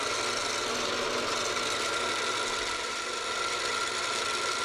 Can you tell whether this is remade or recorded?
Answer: recorded